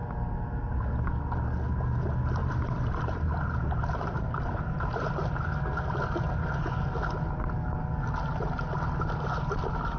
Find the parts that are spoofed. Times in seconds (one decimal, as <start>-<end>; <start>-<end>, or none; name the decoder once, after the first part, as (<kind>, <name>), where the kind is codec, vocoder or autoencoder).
2.4-4.8 (vocoder, BigVGAN v2)